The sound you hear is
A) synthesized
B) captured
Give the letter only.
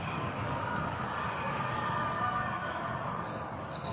A